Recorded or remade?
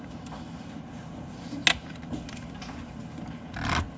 recorded